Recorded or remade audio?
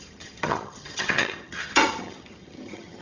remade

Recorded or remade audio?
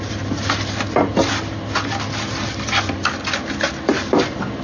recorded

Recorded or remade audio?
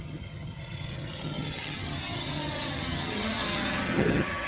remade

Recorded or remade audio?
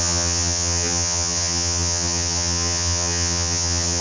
remade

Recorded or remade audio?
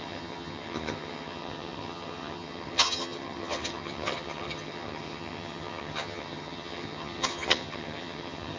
remade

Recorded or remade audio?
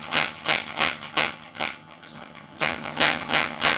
remade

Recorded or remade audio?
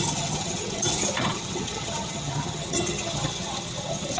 remade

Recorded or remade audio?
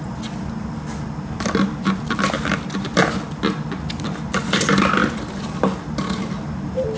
recorded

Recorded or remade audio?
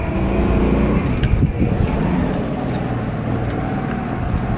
recorded